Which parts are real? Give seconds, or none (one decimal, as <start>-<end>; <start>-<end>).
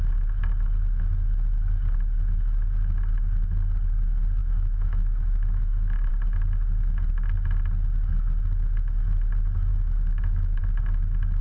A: 0.0-4.4; 6.1-9.7; 10.6-11.4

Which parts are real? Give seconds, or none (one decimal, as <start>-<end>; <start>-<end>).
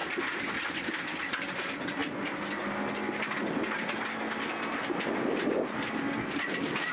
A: 2.0-4.8